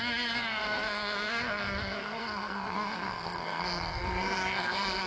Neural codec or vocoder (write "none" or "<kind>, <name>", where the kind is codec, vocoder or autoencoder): codec, SNAC